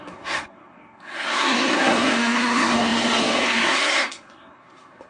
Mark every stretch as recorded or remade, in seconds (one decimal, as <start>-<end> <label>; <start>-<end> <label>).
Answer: 0.0-5.1 remade